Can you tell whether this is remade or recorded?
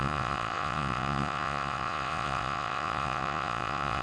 remade